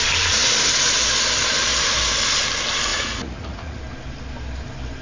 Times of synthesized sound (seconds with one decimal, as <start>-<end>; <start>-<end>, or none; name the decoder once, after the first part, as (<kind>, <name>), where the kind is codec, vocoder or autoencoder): 2.9-3.8 (vocoder, Vocos)